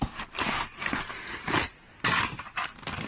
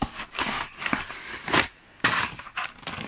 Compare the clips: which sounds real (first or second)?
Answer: first